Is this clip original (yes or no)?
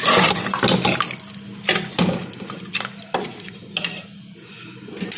yes